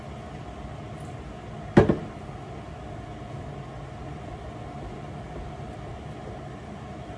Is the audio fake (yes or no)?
no